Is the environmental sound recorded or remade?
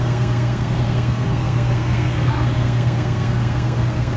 remade